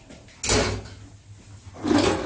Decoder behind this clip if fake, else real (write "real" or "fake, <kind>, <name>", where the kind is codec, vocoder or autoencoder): real